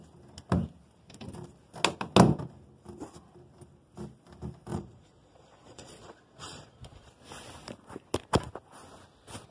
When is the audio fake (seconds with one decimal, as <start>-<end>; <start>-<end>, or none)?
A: 4.7-7.1